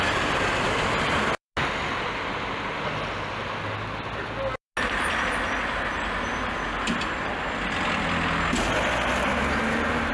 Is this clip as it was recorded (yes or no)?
yes